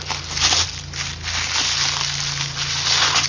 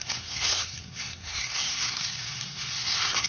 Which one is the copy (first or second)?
second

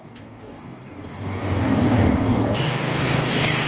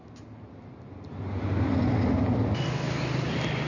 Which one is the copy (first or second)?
first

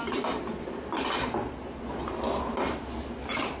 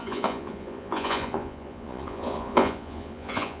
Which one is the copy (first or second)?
second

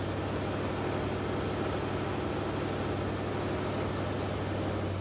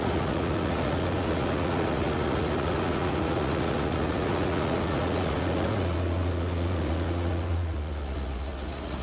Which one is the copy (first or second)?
second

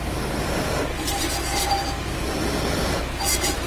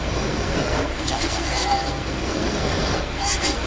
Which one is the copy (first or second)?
second